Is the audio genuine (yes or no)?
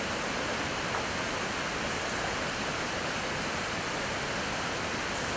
yes